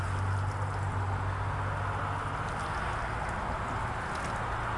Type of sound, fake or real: real